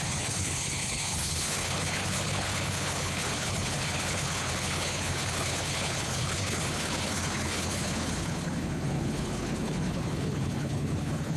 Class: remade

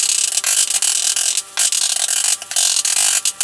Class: recorded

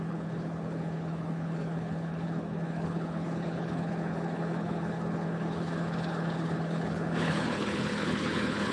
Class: remade